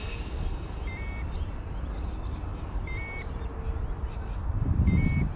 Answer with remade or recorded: recorded